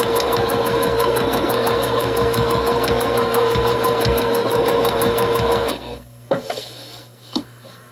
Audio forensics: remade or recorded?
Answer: remade